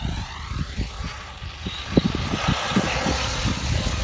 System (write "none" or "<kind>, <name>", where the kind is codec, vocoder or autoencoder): none